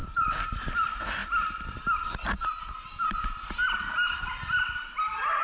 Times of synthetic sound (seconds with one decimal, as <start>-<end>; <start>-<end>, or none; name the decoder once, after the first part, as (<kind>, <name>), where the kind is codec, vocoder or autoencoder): 0.0-0.7 (vocoder, BigVGAN v2)